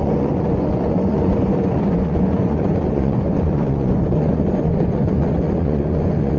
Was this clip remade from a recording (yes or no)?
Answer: yes